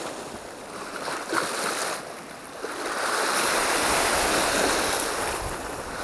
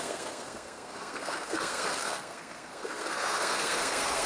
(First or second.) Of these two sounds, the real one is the first